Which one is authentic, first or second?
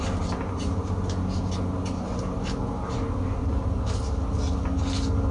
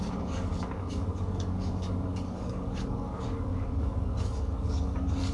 first